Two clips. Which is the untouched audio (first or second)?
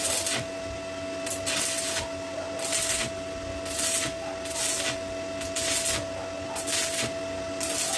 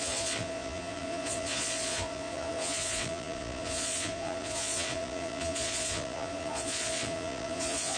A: first